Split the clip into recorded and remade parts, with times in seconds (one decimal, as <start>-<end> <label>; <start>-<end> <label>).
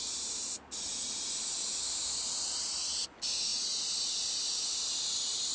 0.0-5.5 recorded